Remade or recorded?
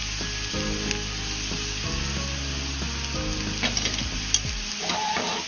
recorded